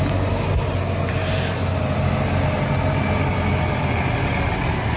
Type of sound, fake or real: real